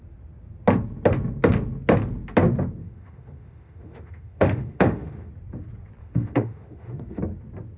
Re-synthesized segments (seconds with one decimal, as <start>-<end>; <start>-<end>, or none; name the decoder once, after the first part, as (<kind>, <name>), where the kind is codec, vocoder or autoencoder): 2.8-5.3 (autoencoder, DAC-VAE); 6.0-7.2